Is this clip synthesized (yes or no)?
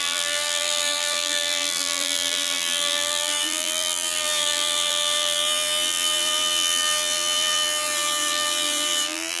yes